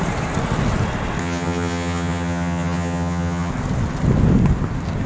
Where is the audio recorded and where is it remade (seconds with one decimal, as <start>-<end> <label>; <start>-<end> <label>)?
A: 0.0-1.2 recorded; 1.2-3.5 remade; 3.5-5.1 recorded